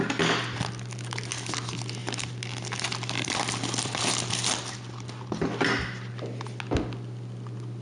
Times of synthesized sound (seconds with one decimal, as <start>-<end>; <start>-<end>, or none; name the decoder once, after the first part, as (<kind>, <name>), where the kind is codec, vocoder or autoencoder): 2.0-6.1 (vocoder, BigVGAN v2)